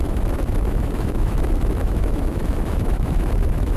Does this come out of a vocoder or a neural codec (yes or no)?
yes